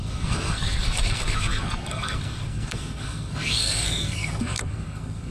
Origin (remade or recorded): remade